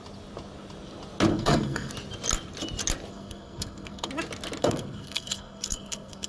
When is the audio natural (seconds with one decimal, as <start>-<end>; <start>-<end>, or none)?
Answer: 0.0-1.3; 1.9-3.1; 4.1-4.6